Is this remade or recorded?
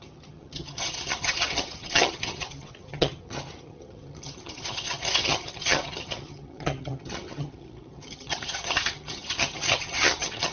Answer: remade